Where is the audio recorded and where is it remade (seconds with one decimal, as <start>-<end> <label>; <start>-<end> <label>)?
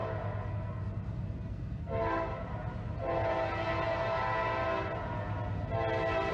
0.0-0.5 recorded; 0.5-2.3 remade; 2.3-6.3 recorded